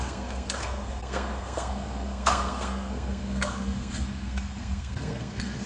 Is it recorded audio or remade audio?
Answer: remade